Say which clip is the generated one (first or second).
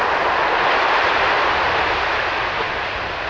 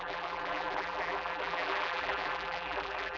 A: second